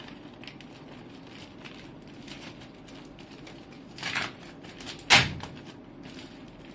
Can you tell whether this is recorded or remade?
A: recorded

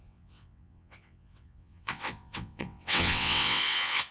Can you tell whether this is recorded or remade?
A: remade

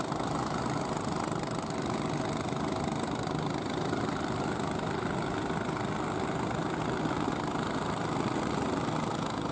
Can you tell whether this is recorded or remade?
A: recorded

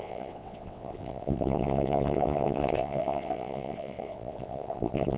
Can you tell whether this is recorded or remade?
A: remade